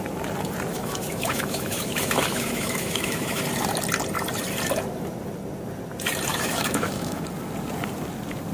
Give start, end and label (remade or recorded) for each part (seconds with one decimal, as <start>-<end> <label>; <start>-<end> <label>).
0.0-0.7 recorded; 0.7-3.4 remade; 3.4-6.3 recorded; 6.3-7.2 remade; 7.2-8.5 recorded